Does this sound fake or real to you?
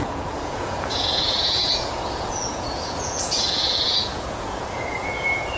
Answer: fake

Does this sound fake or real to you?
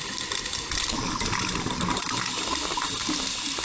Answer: real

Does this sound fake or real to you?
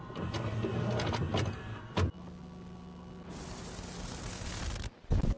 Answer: real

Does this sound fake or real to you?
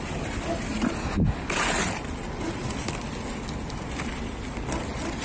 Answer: real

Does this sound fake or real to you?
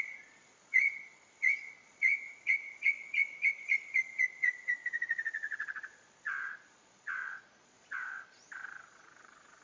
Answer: fake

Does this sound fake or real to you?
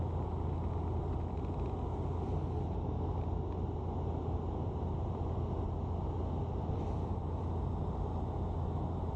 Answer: real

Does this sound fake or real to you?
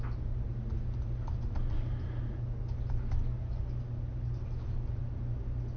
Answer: real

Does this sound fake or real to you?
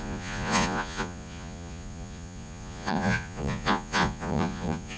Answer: fake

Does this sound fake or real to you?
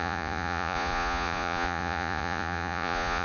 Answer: fake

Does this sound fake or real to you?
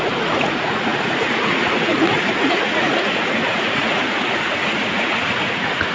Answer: fake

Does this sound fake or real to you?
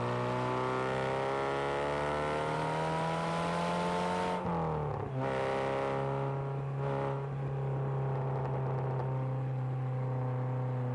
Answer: real